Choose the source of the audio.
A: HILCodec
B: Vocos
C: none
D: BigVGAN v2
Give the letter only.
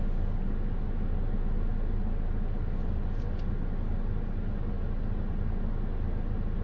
C